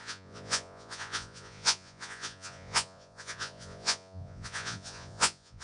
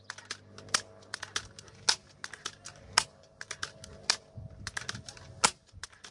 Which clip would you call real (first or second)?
second